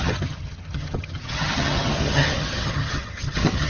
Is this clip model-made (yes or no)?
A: yes